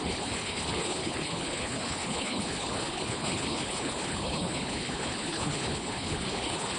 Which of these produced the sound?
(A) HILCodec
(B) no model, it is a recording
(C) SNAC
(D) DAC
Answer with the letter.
A